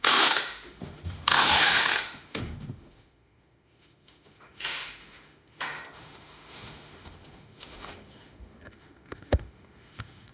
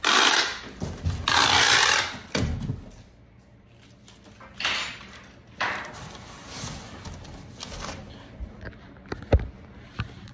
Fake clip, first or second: first